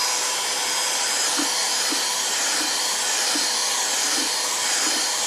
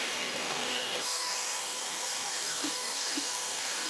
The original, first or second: first